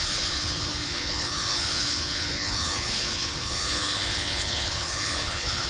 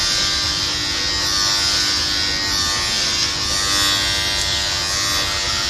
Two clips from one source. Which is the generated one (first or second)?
first